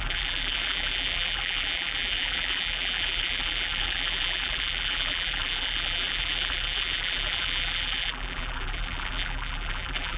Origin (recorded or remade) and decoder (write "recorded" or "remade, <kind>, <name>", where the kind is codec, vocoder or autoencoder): remade, vocoder, BigVGAN v2